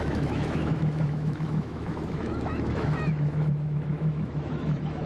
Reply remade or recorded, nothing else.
remade